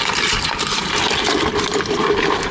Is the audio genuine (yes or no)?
yes